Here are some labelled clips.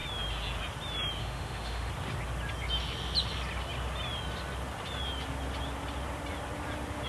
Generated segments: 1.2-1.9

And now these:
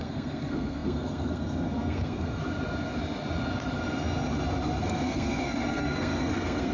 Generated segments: 0.0-2.4; 4.8-6.7

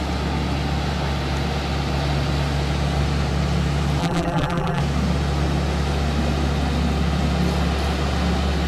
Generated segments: 4.0-4.8